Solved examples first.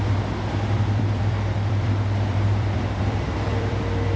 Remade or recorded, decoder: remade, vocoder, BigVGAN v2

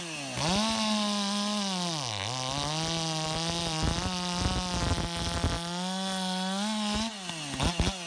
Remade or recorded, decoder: recorded